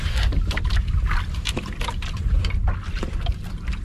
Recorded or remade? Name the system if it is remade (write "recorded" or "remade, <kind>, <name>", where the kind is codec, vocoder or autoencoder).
recorded